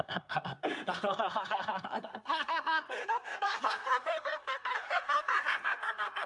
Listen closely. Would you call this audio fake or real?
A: fake